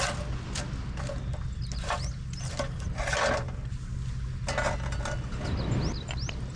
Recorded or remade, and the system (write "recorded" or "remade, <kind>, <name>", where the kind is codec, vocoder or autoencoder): recorded